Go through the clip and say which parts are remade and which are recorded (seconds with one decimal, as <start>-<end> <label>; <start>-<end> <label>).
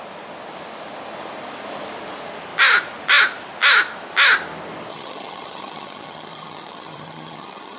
0.0-4.9 recorded; 4.9-7.8 remade